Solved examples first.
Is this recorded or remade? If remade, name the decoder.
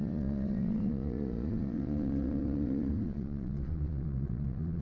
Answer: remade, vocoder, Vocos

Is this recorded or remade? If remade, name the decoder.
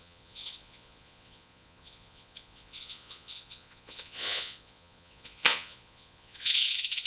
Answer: remade, vocoder, Vocos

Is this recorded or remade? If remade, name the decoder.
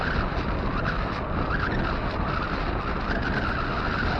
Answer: recorded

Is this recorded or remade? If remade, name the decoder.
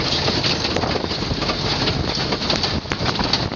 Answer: recorded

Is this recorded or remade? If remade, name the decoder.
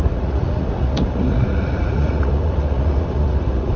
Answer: remade, vocoder, Vocos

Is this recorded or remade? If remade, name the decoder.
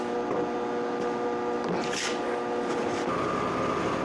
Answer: recorded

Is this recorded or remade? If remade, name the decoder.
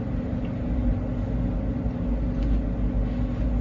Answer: recorded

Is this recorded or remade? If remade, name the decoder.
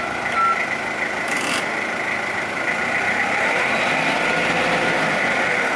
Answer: recorded